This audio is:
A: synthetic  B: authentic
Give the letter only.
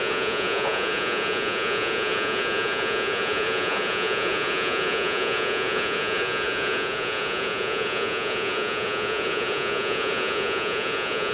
A